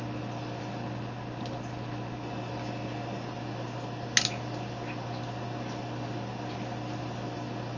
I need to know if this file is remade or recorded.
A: recorded